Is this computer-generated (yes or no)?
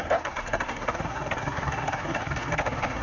yes